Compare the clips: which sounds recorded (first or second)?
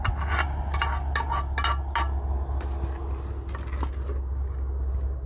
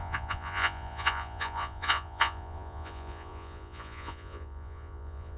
first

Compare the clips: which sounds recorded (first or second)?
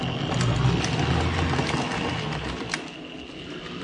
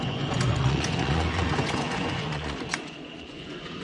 first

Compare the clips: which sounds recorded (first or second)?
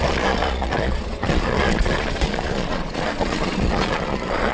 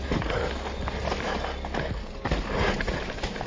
second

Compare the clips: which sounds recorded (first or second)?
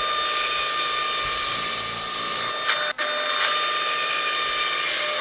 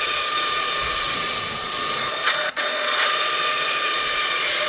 first